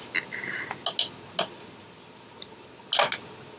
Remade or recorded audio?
recorded